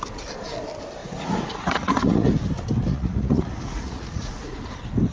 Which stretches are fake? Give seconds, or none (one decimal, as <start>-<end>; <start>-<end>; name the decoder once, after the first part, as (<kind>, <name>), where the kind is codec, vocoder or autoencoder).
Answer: 1.0-2.3 (vocoder, Vocos); 2.9-4.4